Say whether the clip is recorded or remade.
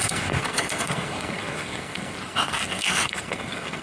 remade